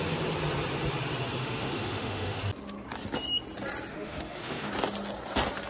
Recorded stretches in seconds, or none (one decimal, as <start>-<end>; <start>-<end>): 0.0-1.4; 2.4-3.9; 4.7-5.7